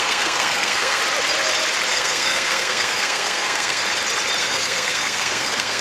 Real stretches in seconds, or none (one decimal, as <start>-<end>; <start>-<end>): 1.0-1.9; 3.8-4.4